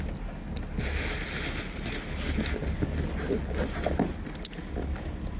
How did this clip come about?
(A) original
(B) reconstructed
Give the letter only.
A